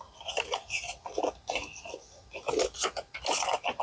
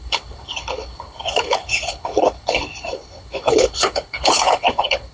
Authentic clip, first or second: first